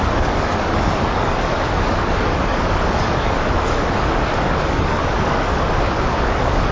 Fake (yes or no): yes